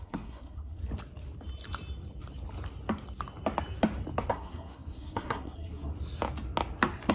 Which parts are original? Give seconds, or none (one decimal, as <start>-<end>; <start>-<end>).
0.8-4.3; 5.9-7.1